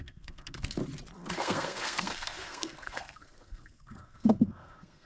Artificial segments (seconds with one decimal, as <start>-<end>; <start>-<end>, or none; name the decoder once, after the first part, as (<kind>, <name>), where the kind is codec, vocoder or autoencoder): 0.0-0.8 (codec, SNAC); 1.3-5.1